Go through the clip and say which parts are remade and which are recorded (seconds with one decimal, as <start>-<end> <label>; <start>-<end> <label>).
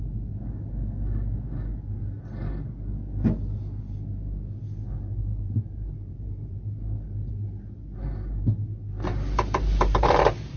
0.0-5.3 recorded; 5.3-7.3 remade; 7.3-9.1 recorded; 9.1-10.6 remade